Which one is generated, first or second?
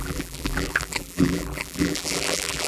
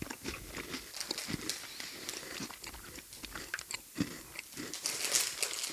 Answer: first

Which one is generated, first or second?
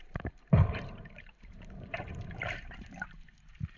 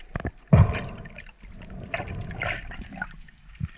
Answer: first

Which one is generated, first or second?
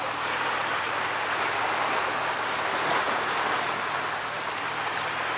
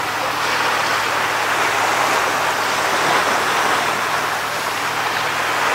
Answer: first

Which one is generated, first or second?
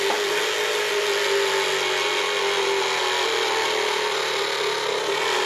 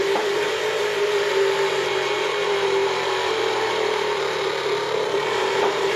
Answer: second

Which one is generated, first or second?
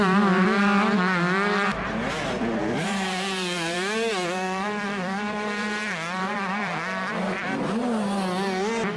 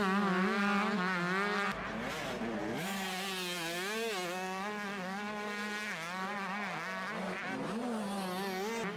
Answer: first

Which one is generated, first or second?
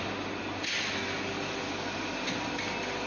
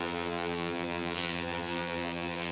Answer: second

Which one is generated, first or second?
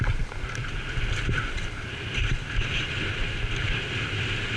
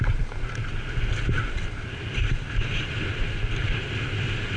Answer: first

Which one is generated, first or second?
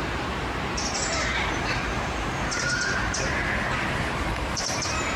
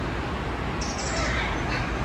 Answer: first